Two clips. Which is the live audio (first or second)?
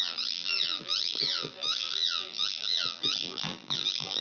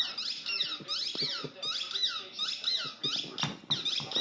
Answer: second